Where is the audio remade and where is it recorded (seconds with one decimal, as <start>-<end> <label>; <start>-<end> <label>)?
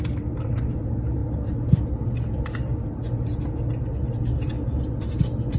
0.0-5.6 recorded